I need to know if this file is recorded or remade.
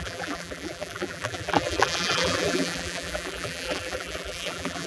remade